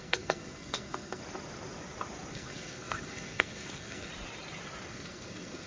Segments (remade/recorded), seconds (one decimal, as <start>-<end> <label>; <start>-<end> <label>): 0.0-1.2 remade; 1.2-2.3 recorded; 2.3-4.1 remade; 4.1-4.9 recorded; 4.9-5.7 remade